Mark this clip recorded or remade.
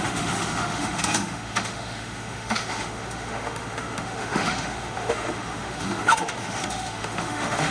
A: remade